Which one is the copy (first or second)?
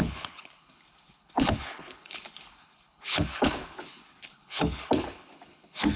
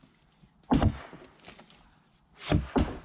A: first